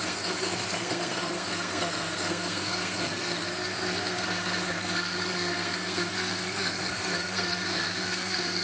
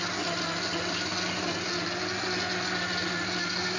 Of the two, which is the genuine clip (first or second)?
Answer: second